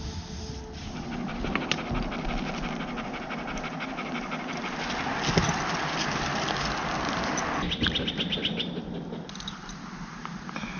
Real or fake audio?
real